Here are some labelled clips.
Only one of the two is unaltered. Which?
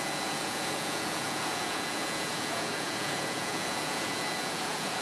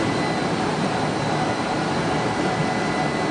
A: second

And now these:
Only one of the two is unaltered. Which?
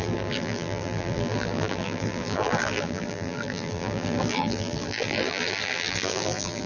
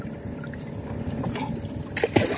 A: second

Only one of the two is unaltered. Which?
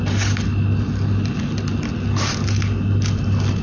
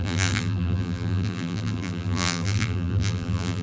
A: first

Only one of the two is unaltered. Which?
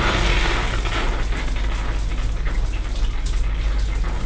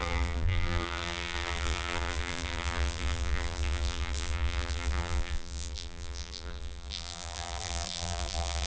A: first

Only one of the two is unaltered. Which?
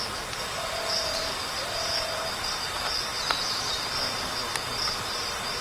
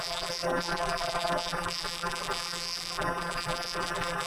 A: first